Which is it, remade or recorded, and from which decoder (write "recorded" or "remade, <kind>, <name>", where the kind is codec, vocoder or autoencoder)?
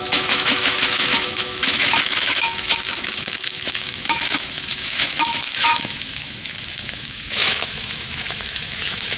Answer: remade, autoencoder, DAC-VAE